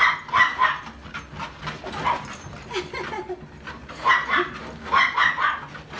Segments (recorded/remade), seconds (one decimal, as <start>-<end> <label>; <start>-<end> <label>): 0.0-6.0 recorded